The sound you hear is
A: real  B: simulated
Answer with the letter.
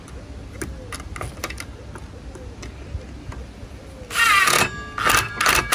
A